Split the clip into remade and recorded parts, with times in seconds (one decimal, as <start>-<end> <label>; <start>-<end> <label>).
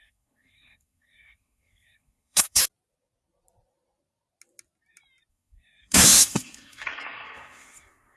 0.0-2.6 remade; 2.6-5.3 recorded; 5.3-8.2 remade